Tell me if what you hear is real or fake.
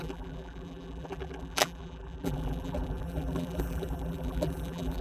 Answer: fake